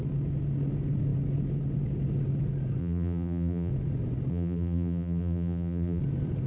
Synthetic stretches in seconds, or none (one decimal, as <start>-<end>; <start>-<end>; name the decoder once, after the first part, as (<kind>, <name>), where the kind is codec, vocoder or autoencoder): 2.8-3.7 (vocoder, BigVGAN v2); 4.3-6.0